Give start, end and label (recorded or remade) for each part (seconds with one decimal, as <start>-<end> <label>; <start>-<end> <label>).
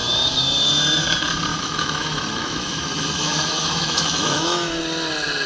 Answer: 0.0-1.5 recorded; 1.5-4.8 remade; 4.8-5.5 recorded